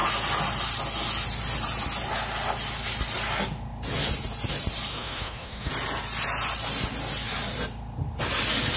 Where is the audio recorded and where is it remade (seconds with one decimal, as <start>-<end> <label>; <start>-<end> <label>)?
0.0-4.9 recorded; 4.9-5.7 remade; 5.7-8.8 recorded